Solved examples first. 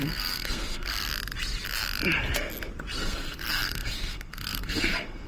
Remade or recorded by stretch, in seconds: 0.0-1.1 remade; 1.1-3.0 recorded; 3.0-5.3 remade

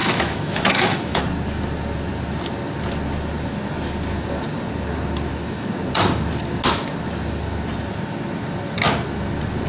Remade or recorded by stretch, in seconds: 0.0-1.2 remade; 1.2-5.3 recorded; 5.3-5.8 remade; 5.8-9.7 recorded

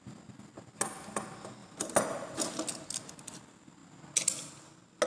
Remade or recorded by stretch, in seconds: 0.0-5.1 recorded

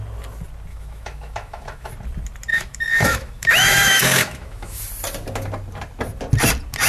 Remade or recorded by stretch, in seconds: 0.0-0.7 recorded; 0.7-1.9 remade; 1.9-2.5 recorded; 2.5-4.8 remade; 4.8-6.9 recorded